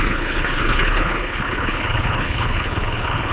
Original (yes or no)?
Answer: no